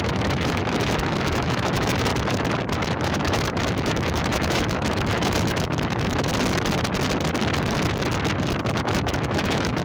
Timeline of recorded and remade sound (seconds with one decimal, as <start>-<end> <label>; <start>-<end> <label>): 0.0-2.1 remade; 2.1-2.8 recorded; 2.8-6.3 remade; 6.3-8.8 recorded; 8.8-9.8 remade